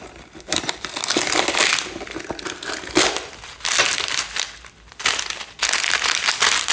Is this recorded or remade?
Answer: recorded